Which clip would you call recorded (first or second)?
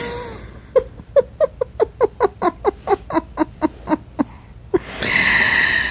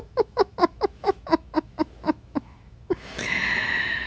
first